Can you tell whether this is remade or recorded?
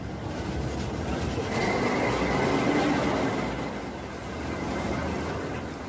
recorded